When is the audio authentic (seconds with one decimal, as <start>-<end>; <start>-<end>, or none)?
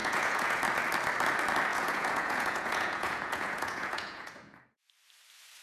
0.6-1.7; 4.6-5.6